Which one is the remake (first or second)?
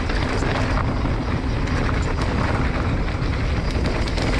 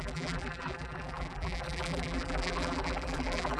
second